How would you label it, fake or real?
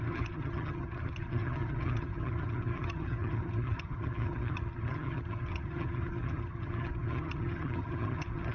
fake